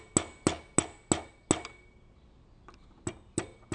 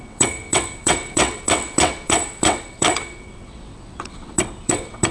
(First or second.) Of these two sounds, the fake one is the second